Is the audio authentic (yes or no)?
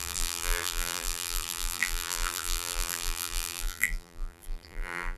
no